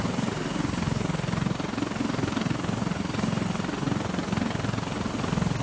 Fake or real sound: real